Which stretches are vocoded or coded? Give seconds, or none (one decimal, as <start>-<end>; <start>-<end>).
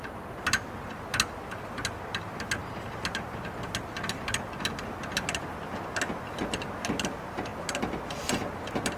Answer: none